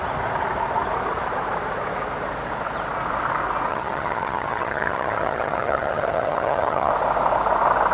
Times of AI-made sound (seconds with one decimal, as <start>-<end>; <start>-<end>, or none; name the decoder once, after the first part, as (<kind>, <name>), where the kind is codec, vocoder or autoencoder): 3.7-6.9 (vocoder, HiFi-GAN)